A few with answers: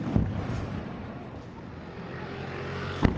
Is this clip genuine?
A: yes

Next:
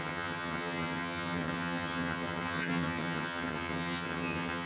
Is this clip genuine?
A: no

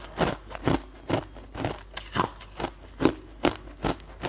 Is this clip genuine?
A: yes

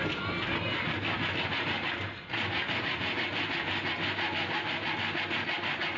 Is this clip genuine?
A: yes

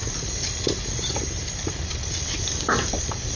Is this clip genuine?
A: yes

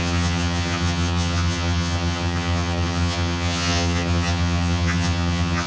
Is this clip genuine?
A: no